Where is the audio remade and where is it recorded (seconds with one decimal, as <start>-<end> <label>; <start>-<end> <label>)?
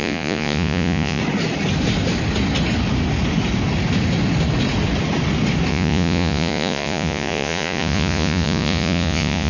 0.0-1.2 remade; 1.2-5.7 recorded; 5.7-9.5 remade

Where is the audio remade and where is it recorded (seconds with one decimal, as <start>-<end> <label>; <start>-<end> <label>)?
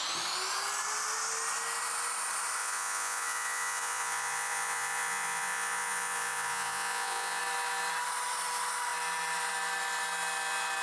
0.0-2.6 recorded; 2.6-7.4 remade; 7.4-10.8 recorded